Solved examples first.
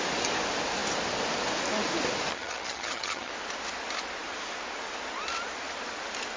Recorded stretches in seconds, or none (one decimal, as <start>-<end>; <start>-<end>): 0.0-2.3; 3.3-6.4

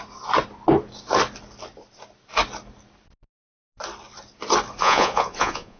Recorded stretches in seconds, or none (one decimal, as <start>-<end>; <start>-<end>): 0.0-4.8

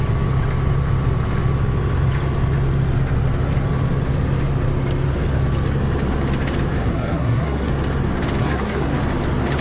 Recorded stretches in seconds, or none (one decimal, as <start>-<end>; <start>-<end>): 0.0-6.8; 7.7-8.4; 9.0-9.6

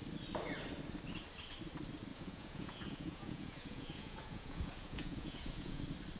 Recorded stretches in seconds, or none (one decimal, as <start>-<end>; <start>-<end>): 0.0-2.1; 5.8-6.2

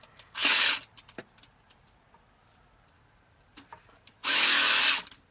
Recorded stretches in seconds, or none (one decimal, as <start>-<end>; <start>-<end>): 0.0-4.2; 4.8-5.3

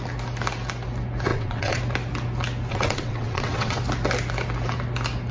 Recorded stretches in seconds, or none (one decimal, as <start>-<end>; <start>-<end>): 0.0-1.3; 1.8-2.7; 3.8-5.3